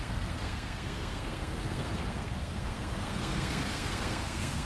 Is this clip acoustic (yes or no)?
no